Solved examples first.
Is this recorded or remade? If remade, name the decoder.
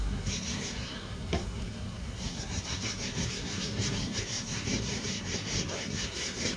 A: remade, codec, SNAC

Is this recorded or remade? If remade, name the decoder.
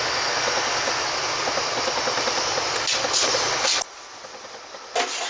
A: recorded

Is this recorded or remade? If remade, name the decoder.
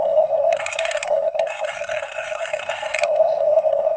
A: remade, codec, SNAC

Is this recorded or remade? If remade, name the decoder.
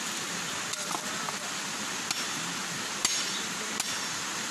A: recorded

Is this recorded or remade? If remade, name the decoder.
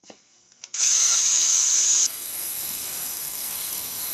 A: remade, codec, SNAC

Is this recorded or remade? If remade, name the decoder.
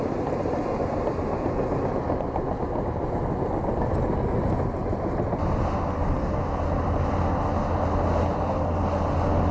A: recorded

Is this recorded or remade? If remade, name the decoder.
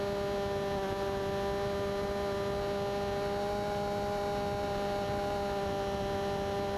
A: recorded